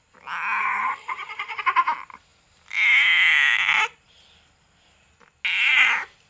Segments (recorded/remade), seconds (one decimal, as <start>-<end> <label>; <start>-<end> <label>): 0.0-0.6 recorded; 0.6-1.6 remade; 1.6-6.3 recorded